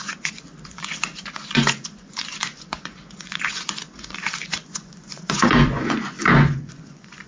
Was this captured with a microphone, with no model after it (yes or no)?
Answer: no